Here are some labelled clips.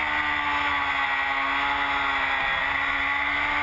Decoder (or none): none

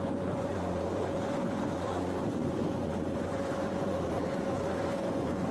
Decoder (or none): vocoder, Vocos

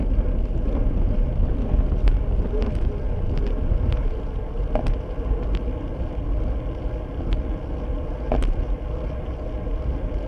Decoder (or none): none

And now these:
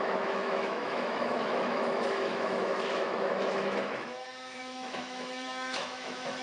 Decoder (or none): autoencoder, DAC-VAE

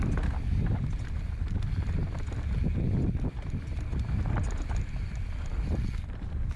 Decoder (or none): none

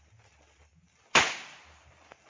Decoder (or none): none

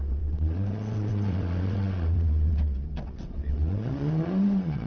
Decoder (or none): vocoder, WaveNeXt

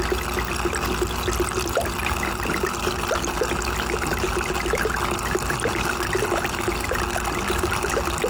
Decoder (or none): none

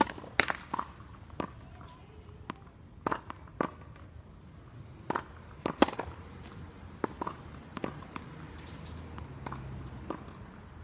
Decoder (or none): none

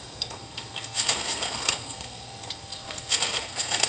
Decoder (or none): codec, SNAC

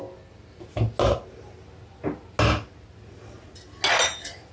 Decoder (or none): none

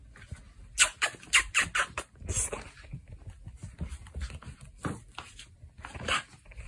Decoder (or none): none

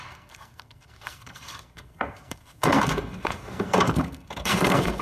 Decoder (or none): codec, SNAC